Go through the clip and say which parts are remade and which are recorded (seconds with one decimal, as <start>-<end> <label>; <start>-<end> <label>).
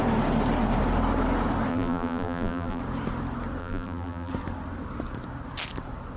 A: 0.0-1.7 recorded; 1.7-2.8 remade; 2.8-3.6 recorded; 3.6-4.3 remade; 4.3-6.2 recorded